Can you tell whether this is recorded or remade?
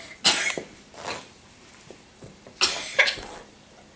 recorded